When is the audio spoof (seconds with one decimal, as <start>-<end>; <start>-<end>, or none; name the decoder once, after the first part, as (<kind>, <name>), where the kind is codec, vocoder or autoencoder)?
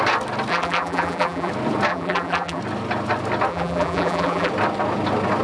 0.5-1.5 (vocoder, BigVGAN v2); 1.9-2.6; 3.5-4.5